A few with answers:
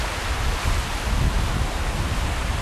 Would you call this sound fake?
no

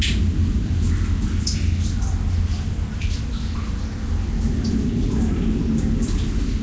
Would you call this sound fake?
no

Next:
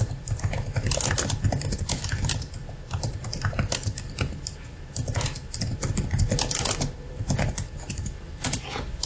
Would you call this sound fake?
no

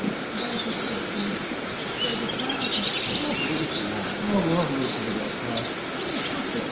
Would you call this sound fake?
no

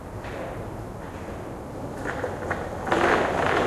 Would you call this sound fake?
no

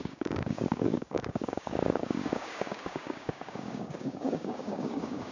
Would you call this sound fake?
yes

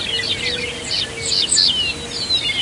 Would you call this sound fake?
no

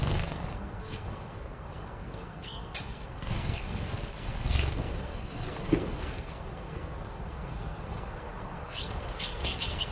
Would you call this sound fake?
yes